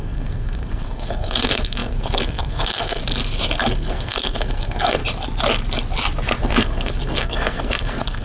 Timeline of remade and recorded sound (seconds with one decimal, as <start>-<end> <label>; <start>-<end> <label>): 0.0-3.0 remade; 3.0-3.6 recorded; 3.6-5.0 remade; 5.0-6.4 recorded; 6.4-8.2 remade